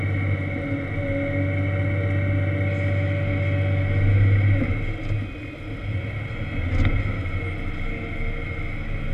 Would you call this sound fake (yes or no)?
no